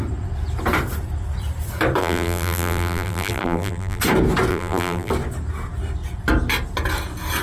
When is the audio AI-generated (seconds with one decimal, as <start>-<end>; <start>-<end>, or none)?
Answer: 2.0-4.0; 4.5-5.1